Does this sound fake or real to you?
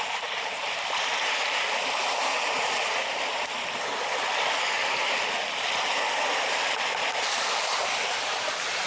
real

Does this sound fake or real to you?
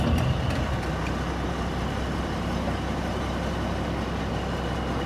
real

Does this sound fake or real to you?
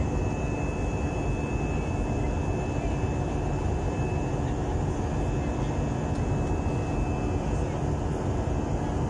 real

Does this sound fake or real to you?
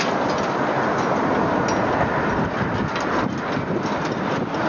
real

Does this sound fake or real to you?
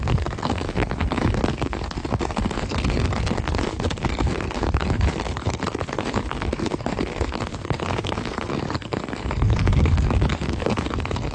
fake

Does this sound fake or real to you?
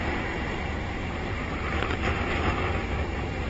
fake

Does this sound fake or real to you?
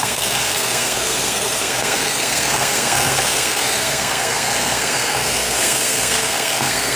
fake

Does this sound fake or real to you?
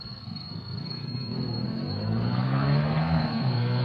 fake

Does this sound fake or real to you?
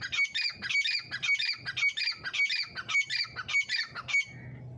real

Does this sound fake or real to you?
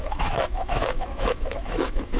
fake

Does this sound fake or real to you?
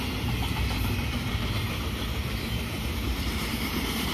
fake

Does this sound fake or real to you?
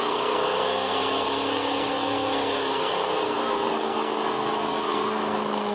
fake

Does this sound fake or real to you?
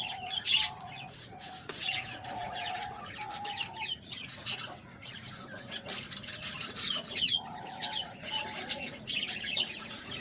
fake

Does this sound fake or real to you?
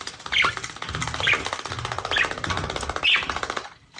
real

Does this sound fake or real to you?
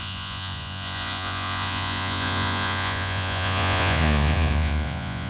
fake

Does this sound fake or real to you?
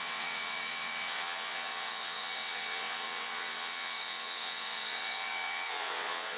fake